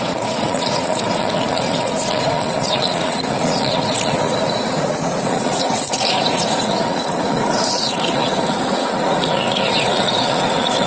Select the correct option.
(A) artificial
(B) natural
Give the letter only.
A